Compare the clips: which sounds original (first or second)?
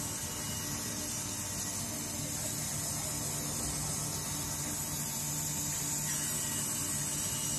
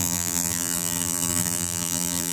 first